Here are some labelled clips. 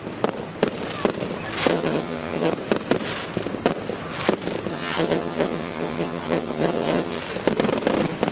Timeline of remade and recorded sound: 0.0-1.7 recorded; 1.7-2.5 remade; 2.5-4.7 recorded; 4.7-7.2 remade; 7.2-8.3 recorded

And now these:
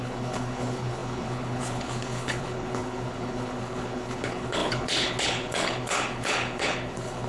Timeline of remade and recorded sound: 0.0-7.3 remade

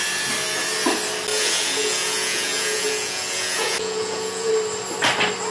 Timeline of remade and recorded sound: 0.0-1.3 recorded; 1.3-4.5 remade; 4.5-5.5 recorded